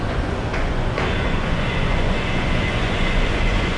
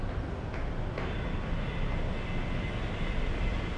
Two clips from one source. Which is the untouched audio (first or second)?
second